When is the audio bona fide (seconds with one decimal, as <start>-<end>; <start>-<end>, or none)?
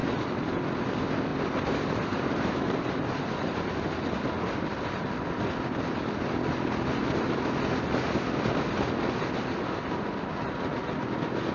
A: 0.0-1.3; 3.7-11.5